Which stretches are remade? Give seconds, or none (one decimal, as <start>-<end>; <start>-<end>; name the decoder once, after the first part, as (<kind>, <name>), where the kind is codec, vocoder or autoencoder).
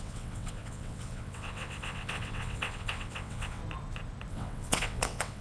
0.0-3.6 (vocoder, WaveNeXt); 4.3-5.4